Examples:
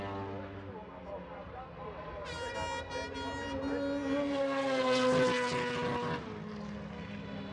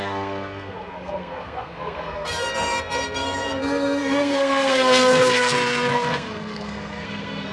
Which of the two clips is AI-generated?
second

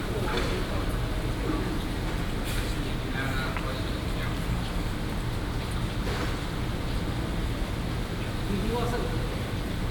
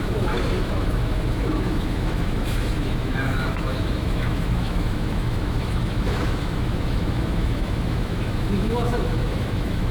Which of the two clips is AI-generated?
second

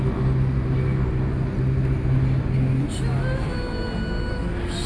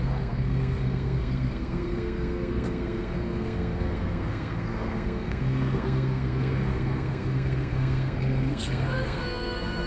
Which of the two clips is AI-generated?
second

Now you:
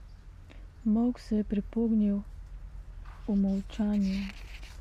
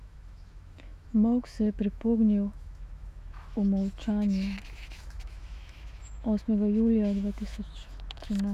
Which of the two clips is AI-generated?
second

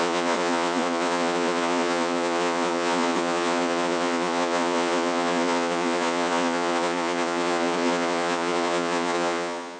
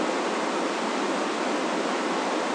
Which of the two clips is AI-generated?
first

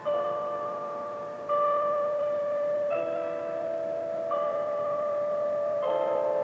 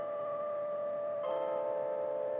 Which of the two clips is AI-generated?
first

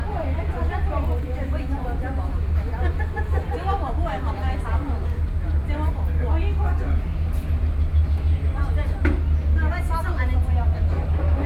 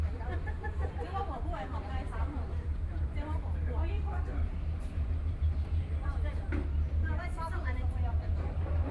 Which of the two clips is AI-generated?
second